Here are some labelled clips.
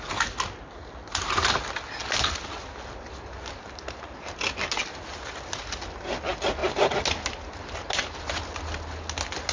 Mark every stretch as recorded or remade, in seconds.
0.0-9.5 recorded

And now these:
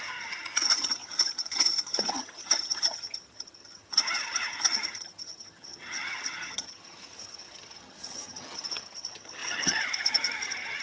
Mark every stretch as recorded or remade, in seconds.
0.0-10.8 remade

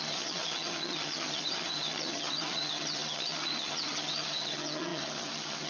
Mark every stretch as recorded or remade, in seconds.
0.0-5.7 remade

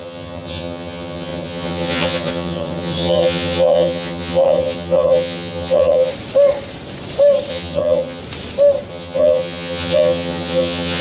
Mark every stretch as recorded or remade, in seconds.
0.0-6.1 remade; 6.1-7.5 recorded; 7.5-8.2 remade; 8.2-8.9 recorded; 8.9-11.0 remade

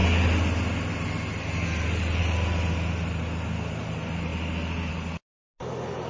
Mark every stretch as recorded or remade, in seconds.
0.0-6.1 recorded

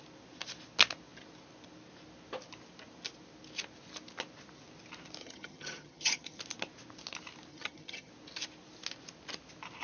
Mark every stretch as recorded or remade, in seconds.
0.0-5.2 recorded; 5.2-6.4 remade; 6.4-7.5 recorded; 7.5-8.1 remade; 8.1-9.8 recorded

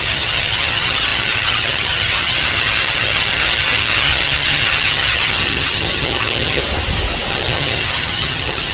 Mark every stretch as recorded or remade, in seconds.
0.0-6.6 remade; 6.6-7.3 recorded; 7.3-8.7 remade